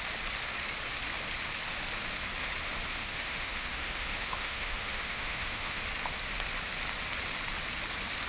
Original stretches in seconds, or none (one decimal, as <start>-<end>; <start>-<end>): 0.0-3.0; 5.8-8.3